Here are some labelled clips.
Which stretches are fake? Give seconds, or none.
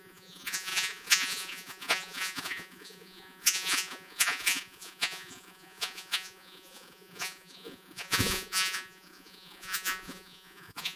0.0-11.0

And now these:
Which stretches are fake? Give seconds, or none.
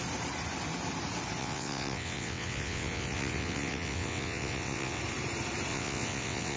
1.4-5.0; 5.7-6.6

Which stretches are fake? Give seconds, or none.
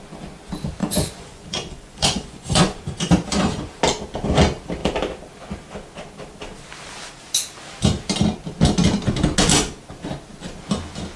0.8-2.8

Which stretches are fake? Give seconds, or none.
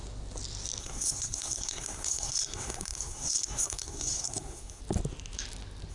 0.8-4.8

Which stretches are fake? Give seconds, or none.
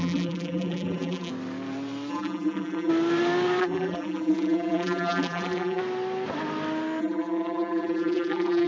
0.0-1.3; 2.1-2.9; 3.6-5.8; 7.0-8.7